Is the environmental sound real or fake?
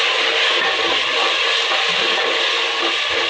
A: real